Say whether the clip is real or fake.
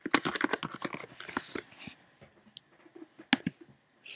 real